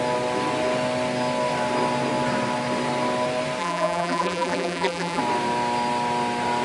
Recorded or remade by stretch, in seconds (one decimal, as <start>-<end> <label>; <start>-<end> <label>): 0.0-3.6 recorded; 3.6-5.2 remade; 5.2-6.6 recorded